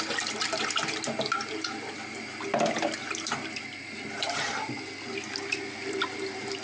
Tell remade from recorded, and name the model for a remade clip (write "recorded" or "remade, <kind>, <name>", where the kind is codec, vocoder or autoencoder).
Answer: recorded